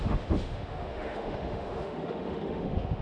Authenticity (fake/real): fake